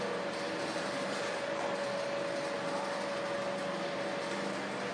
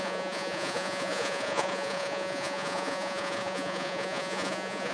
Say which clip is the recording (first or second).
first